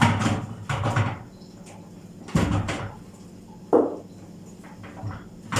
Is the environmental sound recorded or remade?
recorded